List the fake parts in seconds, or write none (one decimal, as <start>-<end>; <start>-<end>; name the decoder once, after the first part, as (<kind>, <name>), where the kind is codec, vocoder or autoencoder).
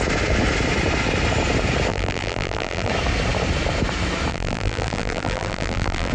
1.9-2.9 (vocoder, BigVGAN v2); 4.3-6.1